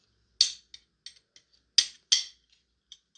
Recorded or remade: recorded